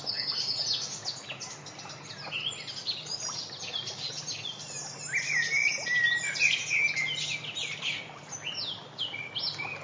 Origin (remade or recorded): recorded